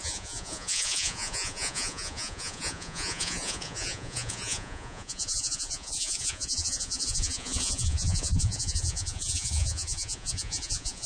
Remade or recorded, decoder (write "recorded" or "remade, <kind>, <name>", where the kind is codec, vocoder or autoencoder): remade, vocoder, Vocos